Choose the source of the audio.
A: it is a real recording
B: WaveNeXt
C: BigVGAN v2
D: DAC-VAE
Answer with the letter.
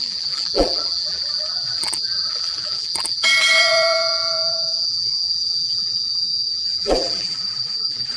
C